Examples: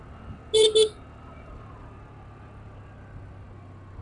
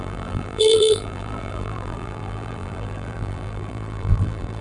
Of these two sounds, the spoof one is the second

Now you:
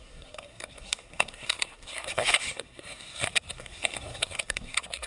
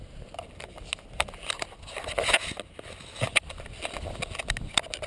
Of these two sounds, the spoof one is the first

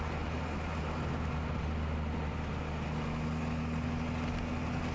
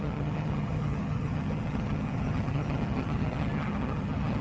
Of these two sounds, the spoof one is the second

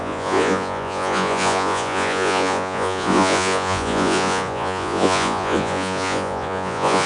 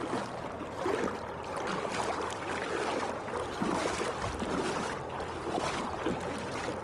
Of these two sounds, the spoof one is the first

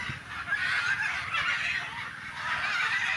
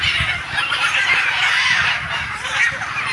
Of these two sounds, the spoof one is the second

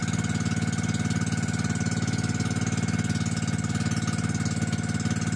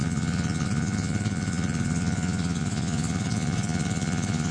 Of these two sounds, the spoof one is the second